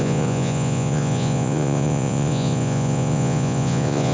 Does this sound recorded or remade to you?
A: remade